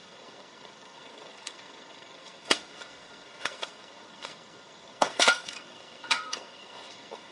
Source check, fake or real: fake